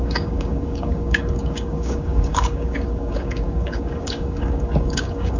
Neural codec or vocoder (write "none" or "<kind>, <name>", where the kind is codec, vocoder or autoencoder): codec, DAC